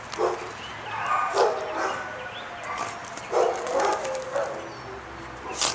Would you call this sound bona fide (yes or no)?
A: yes